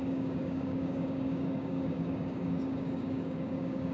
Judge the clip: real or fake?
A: fake